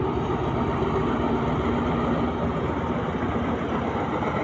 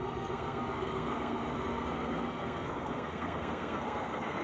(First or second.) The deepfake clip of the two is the second